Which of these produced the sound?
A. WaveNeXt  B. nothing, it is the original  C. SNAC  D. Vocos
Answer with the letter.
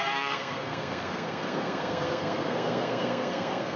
C